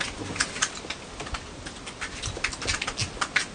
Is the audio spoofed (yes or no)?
no